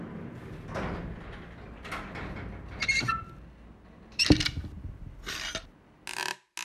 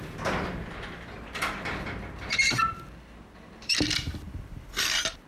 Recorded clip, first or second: first